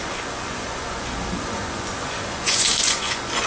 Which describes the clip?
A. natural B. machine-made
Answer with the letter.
B